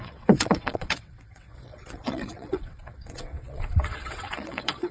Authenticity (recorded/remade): remade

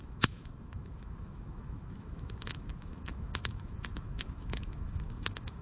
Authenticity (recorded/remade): remade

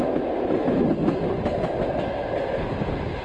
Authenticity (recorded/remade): recorded